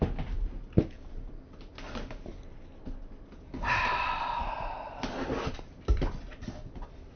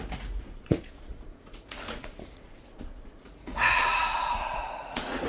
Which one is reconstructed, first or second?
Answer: second